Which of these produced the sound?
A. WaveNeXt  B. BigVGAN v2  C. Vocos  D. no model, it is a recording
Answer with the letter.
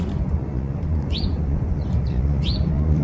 C